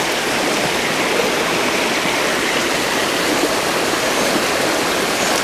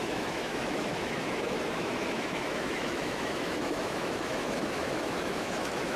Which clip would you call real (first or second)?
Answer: first